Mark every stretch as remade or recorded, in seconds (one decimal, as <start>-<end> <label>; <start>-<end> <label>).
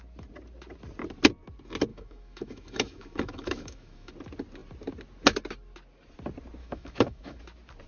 0.0-1.9 recorded; 1.9-4.1 remade; 4.1-6.6 recorded; 6.6-7.4 remade; 7.4-7.9 recorded